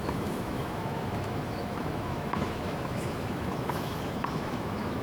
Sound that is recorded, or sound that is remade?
remade